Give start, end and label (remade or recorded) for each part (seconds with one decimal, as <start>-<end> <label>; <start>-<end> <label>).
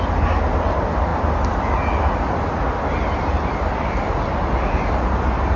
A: 0.0-5.6 recorded